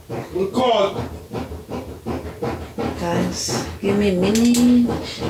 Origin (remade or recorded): recorded